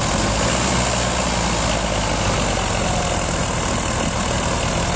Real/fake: real